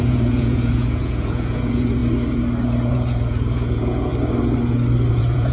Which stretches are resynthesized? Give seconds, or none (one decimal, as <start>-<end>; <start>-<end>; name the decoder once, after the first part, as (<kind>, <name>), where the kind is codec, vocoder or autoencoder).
0.0-2.0 (vocoder, Vocos); 2.9-4.1; 5.1-5.5